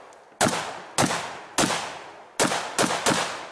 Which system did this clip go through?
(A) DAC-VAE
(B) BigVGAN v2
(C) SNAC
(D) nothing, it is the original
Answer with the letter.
D